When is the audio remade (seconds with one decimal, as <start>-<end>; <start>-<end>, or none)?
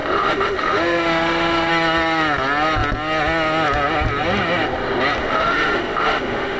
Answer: 0.0-1.7; 5.2-6.6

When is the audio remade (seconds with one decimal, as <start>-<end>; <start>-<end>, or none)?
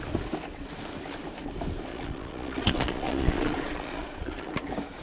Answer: 1.9-4.5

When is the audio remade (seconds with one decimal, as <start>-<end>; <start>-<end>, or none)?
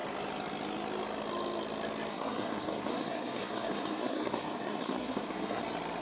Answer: 2.1-5.6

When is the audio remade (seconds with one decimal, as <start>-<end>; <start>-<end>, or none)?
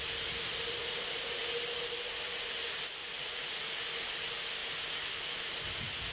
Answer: 3.0-3.8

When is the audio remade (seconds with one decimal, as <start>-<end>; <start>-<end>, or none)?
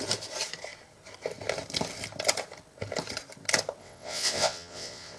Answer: 3.8-5.2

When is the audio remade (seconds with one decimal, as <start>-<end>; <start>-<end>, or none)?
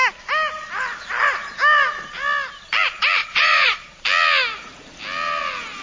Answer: 3.2-3.8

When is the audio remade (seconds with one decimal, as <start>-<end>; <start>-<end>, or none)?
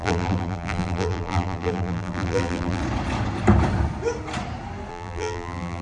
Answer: 0.0-2.8; 4.9-5.8